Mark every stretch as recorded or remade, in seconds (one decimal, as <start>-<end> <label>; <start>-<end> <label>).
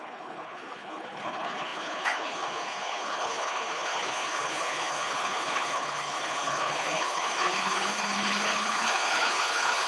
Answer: 0.0-9.9 remade